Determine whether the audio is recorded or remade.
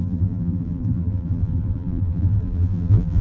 remade